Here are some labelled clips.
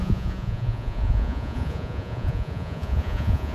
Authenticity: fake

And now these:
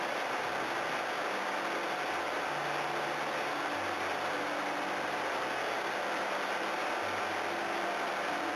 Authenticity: real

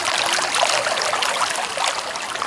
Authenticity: real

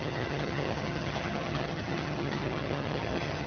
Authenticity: fake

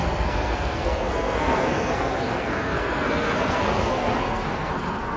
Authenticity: fake